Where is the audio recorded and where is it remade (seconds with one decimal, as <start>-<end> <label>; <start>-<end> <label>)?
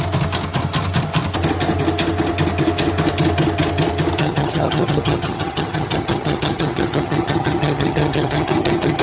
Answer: 0.0-4.2 recorded; 4.2-9.0 remade